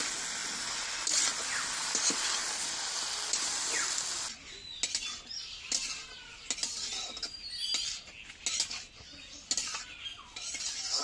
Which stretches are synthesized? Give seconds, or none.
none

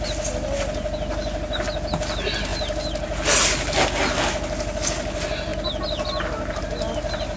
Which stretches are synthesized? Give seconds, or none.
none